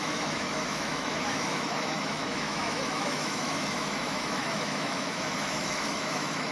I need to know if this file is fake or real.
fake